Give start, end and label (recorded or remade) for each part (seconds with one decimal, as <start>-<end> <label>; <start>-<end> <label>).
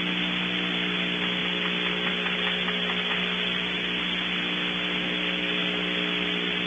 0.0-6.7 recorded